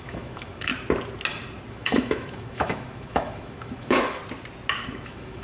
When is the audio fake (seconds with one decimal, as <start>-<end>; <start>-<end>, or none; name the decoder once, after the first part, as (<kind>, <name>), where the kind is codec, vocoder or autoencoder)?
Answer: 0.0-0.7 (autoencoder, DAC-VAE); 1.7-4.2; 4.9-5.4